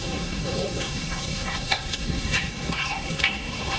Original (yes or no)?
no